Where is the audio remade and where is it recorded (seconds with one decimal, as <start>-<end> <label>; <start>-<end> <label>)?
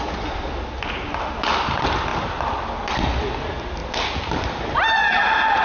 0.0-2.1 recorded; 2.1-2.9 remade; 2.9-3.8 recorded; 3.8-5.1 remade; 5.1-5.6 recorded